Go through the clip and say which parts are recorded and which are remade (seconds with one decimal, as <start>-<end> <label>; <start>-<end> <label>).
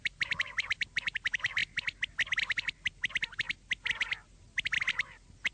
0.0-1.6 remade; 1.6-4.9 recorded; 4.9-5.5 remade